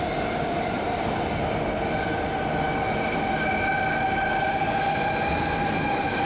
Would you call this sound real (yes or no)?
yes